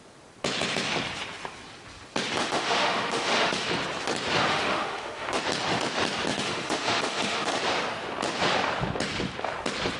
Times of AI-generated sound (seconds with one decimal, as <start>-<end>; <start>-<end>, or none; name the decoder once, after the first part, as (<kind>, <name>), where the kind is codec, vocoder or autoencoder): 2.4-3.7 (autoencoder, DAC-VAE); 4.5-5.4; 6.3-7.6

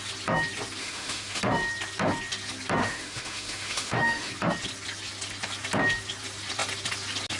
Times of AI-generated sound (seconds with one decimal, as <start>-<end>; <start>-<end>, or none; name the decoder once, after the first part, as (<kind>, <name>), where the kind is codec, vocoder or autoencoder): 0.8-1.4 (autoencoder, DAC-VAE); 2.8-4.3

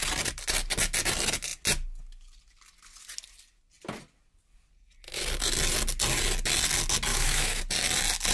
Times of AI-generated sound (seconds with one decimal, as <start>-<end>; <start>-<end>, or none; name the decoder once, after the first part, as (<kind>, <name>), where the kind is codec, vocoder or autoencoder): 7.1-7.6 (autoencoder, DAC-VAE)

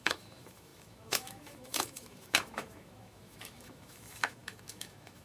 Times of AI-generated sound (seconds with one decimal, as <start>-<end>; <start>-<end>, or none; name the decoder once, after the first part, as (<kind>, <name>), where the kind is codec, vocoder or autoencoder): 0.0-5.2 (autoencoder, DAC-VAE)